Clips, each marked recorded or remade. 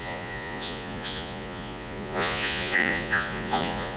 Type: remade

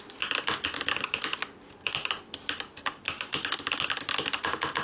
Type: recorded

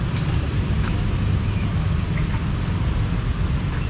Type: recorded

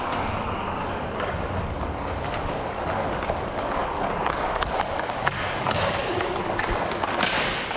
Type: remade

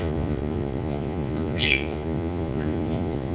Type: remade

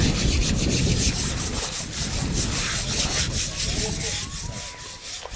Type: recorded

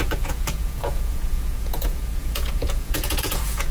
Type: remade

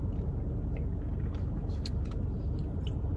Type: recorded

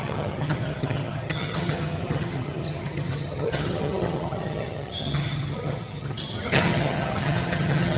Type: remade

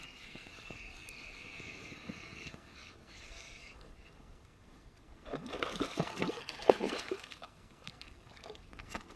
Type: remade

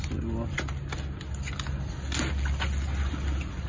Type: recorded